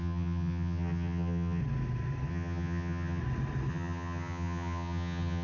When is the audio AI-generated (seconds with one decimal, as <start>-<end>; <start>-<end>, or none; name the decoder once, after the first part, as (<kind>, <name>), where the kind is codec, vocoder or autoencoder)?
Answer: 0.0-1.6 (vocoder, HiFi-GAN); 2.3-3.2; 3.7-5.4